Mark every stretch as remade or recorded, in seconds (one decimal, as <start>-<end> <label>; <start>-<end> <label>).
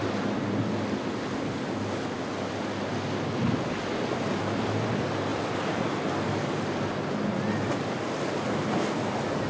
0.0-1.1 recorded; 1.1-1.8 remade; 1.8-5.3 recorded; 5.3-6.6 remade; 6.6-9.5 recorded